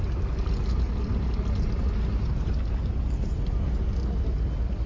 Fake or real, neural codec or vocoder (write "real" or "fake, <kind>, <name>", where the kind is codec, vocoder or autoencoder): real